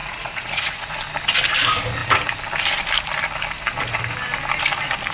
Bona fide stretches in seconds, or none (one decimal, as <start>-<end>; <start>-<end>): 1.0-5.1